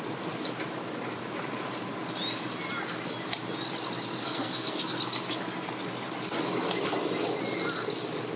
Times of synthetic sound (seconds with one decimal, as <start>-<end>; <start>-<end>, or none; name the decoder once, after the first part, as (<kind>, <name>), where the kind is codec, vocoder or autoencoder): 4.1-5.0 (codec, SNAC)